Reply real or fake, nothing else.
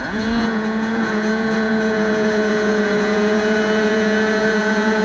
fake